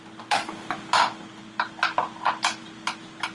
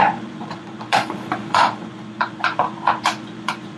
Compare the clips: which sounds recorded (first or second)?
first